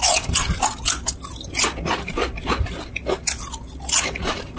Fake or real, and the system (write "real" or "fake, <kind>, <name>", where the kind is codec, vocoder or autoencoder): real